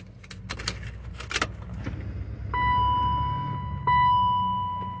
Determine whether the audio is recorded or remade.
recorded